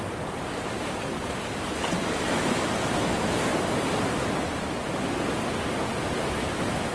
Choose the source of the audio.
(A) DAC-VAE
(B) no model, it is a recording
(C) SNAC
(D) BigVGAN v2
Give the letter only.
B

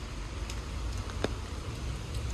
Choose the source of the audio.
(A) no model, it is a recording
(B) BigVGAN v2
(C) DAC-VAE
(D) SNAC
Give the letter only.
B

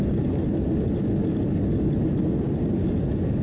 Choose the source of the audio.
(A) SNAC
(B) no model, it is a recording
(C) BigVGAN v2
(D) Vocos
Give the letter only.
B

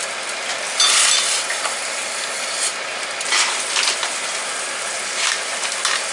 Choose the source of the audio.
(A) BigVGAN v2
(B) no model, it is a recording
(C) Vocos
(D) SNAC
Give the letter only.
A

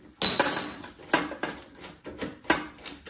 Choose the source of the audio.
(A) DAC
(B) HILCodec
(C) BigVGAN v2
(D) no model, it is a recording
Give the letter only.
D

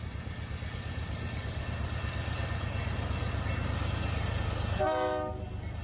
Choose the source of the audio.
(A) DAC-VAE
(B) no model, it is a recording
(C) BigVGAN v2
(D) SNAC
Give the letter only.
B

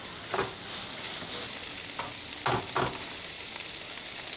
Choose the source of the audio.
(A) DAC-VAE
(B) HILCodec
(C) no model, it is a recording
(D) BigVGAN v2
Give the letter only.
C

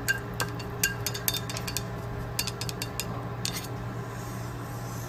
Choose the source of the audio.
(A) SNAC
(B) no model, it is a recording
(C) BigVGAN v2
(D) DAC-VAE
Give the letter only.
B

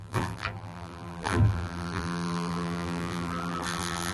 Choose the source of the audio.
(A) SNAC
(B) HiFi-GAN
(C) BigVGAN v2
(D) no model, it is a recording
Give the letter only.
C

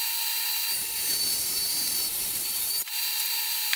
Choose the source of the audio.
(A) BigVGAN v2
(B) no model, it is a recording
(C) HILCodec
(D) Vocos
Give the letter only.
A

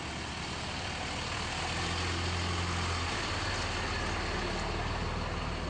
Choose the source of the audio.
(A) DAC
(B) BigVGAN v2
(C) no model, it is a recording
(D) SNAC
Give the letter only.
C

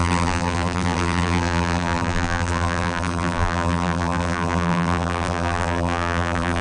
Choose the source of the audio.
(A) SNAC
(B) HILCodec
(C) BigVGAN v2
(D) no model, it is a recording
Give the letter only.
C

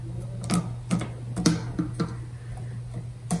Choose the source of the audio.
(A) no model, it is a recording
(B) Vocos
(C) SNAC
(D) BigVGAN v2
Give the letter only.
A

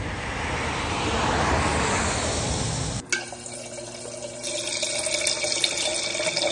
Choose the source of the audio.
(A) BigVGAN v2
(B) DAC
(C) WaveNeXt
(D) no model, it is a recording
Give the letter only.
D